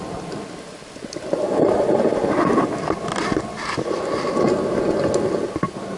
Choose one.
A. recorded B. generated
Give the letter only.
A